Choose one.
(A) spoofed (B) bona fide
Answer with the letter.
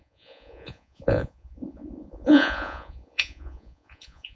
A